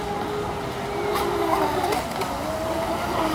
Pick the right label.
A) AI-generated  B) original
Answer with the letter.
B